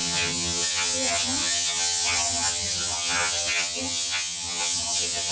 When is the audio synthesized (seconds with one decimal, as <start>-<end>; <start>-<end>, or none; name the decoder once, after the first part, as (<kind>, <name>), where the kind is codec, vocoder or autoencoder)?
0.0-5.3 (vocoder, HiFi-GAN)